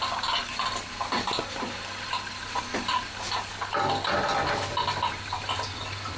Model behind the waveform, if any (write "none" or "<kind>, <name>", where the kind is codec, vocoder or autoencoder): none